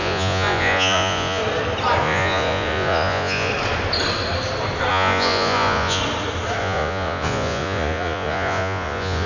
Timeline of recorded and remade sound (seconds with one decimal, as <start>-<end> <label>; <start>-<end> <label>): 0.0-1.4 remade; 1.4-2.0 recorded; 2.0-3.5 remade; 3.5-4.9 recorded; 4.9-6.0 remade; 6.0-6.6 recorded; 6.6-9.3 remade